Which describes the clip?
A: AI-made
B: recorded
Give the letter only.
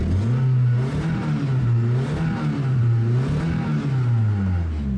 B